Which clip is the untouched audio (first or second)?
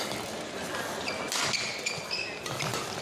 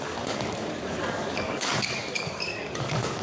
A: first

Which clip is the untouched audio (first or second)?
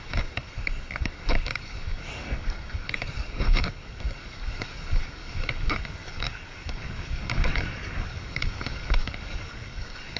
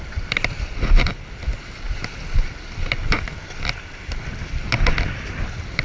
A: second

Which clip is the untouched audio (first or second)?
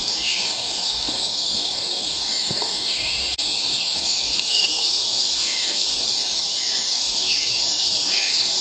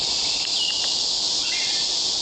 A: second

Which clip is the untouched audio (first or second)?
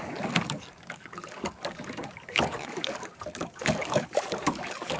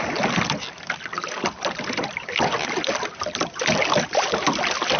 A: second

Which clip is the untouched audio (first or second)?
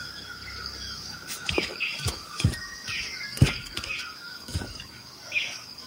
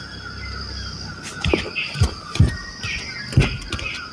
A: second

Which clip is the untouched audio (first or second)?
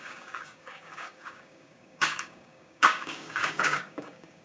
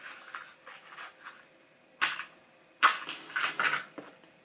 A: second